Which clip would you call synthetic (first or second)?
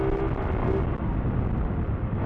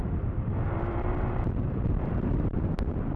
second